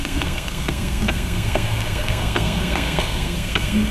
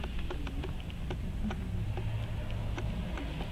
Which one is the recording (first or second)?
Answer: second